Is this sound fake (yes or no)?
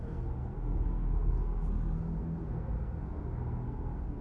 yes